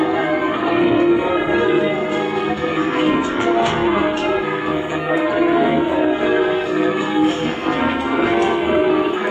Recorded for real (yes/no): no